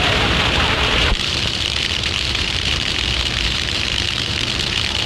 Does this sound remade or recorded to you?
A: remade